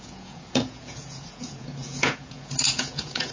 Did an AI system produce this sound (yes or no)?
yes